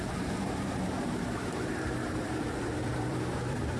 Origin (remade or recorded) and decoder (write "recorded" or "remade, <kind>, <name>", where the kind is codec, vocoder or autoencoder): remade, vocoder, BigVGAN v2